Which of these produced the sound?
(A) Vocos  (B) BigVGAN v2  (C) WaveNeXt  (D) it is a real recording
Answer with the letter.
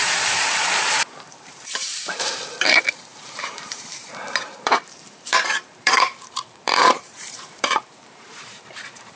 B